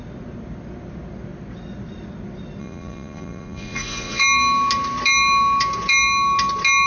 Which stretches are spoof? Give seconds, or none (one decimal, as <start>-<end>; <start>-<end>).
2.6-4.2